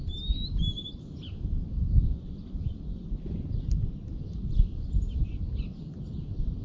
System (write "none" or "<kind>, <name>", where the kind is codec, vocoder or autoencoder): none